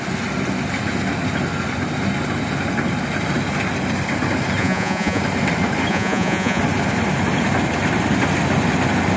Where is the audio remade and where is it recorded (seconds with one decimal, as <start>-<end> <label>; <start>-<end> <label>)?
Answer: 0.0-4.6 recorded; 4.6-5.2 remade; 5.2-5.9 recorded; 5.9-6.6 remade; 6.6-9.2 recorded